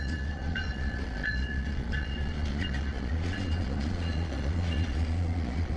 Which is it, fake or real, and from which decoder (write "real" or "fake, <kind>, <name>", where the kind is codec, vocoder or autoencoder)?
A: fake, vocoder, Vocos